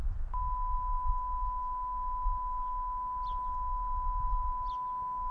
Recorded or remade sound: recorded